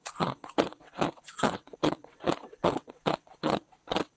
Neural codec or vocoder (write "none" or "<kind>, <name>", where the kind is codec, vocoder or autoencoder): vocoder, WaveNeXt